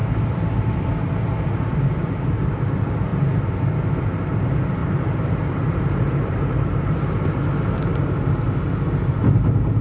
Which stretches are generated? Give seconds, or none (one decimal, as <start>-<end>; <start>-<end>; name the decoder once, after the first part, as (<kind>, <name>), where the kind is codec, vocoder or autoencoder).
0.0-1.1 (vocoder, BigVGAN v2); 4.8-7.8